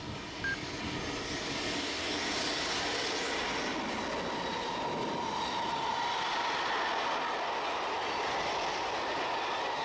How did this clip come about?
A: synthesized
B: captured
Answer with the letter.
B